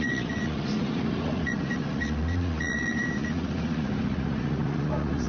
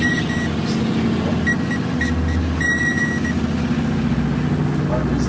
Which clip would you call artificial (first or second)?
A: first